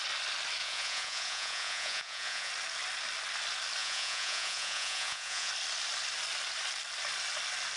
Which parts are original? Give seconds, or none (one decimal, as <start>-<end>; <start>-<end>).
0.0-0.6; 2.5-3.8; 5.5-7.8

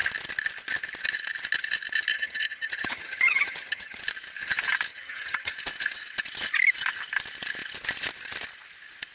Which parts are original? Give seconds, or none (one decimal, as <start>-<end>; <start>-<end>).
0.0-2.1; 4.0-4.9; 5.5-9.1

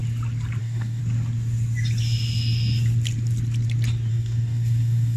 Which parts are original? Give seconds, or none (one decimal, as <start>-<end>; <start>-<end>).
0.0-0.6; 1.0-4.1

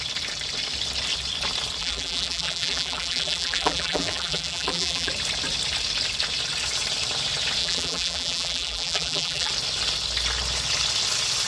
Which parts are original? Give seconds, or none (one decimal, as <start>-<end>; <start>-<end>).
0.0-1.8; 5.1-7.6; 9.5-11.5

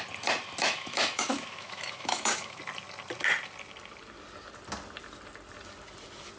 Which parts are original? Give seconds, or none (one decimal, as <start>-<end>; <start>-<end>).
0.0-0.6; 2.6-6.4

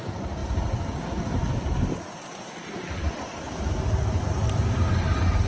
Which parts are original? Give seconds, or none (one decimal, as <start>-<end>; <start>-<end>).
0.0-5.5

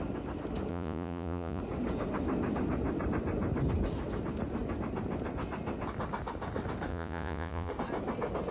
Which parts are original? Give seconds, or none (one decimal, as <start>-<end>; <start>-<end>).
0.0-0.7; 1.6-6.9; 7.7-8.5